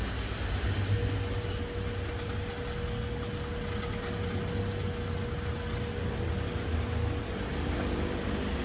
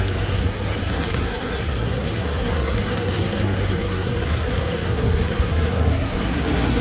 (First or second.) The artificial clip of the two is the second